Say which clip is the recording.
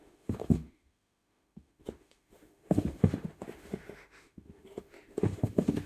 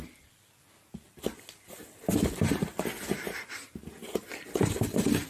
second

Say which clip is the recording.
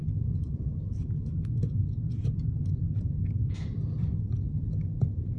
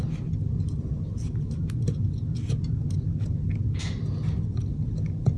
second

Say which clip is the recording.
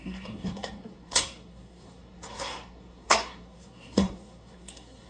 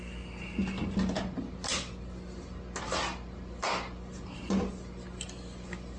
second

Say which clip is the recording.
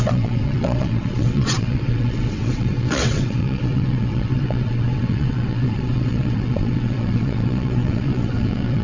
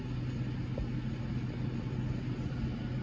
second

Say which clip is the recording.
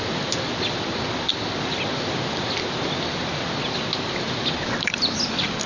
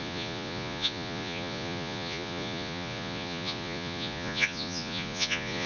first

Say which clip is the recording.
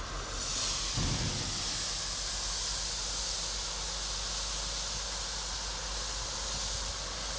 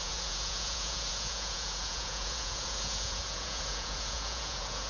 first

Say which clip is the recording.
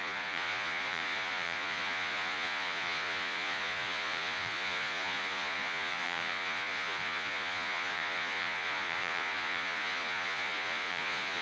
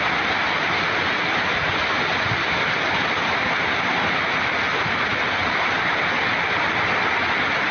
second